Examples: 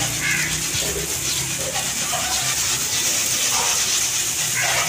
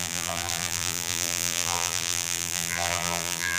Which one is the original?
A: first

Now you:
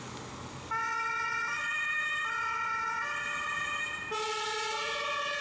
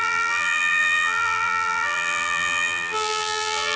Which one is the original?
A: first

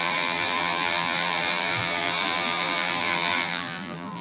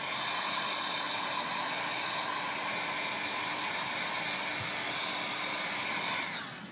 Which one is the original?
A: second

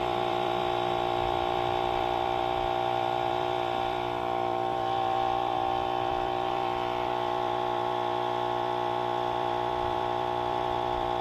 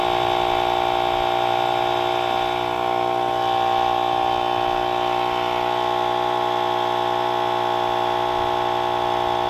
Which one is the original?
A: second